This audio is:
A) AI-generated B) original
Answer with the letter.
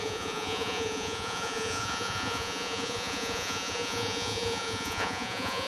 A